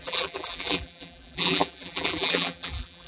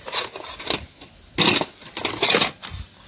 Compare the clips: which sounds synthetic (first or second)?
first